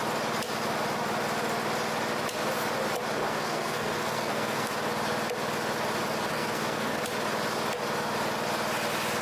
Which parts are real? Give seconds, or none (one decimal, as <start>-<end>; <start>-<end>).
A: 0.0-3.2; 4.7-6.3; 7.0-9.2